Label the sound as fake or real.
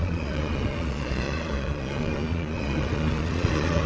fake